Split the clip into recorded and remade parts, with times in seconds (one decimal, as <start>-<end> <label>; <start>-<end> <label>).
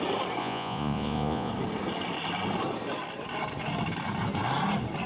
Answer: 0.0-0.4 recorded; 0.4-1.5 remade; 1.5-5.1 recorded